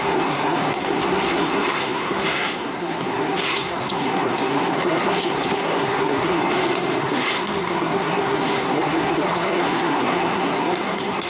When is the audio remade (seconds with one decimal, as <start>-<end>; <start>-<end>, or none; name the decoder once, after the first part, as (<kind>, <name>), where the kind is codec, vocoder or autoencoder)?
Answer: 0.0-6.4 (codec, SNAC); 7.0-11.3